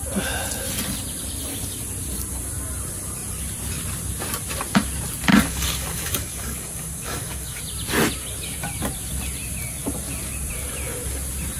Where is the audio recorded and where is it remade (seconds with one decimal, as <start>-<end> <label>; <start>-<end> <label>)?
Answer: 0.0-5.3 recorded; 5.3-7.6 remade; 7.6-11.6 recorded